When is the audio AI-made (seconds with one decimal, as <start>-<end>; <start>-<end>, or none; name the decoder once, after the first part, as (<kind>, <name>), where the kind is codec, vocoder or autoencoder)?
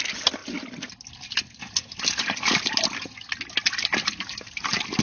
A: none